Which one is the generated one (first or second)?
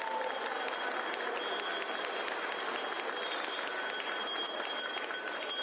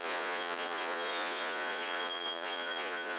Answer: second